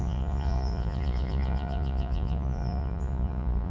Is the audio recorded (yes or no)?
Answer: no